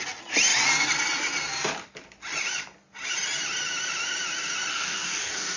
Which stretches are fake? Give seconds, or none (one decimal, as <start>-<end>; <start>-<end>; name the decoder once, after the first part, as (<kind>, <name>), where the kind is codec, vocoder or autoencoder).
4.7-5.6 (codec, DAC)